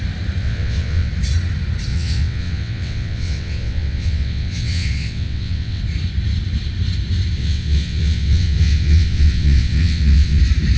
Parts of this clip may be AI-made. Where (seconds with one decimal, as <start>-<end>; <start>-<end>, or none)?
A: 0.4-1.1; 1.9-5.8; 7.4-10.4